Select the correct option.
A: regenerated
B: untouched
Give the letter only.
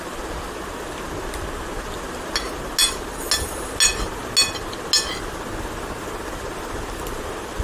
B